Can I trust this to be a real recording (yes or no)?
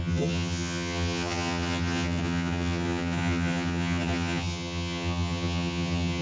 no